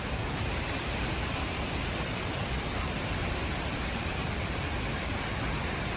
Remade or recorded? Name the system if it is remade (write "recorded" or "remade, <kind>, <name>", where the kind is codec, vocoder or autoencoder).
remade, vocoder, BigVGAN v2